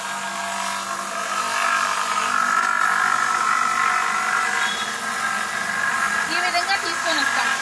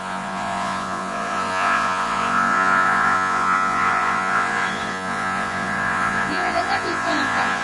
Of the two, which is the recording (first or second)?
first